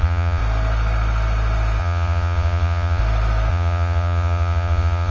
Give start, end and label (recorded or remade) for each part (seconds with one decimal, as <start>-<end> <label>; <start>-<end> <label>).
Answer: 0.0-0.4 remade; 0.4-1.8 recorded; 1.8-3.0 remade; 3.0-3.5 recorded; 3.5-5.1 remade